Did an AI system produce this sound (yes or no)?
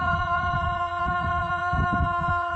yes